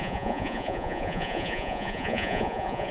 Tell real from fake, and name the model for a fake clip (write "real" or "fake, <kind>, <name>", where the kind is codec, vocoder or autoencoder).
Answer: fake, vocoder, Vocos